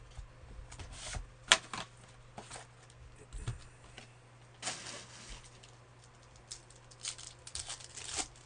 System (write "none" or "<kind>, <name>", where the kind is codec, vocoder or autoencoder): none